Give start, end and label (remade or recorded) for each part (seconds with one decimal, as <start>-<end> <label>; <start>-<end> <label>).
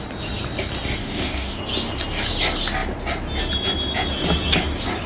0.0-1.0 recorded; 1.0-1.6 remade; 1.6-5.1 recorded